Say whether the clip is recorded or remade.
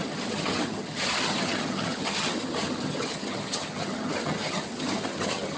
remade